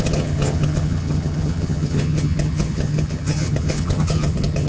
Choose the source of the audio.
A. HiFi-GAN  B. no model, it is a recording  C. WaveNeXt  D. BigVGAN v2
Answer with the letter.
A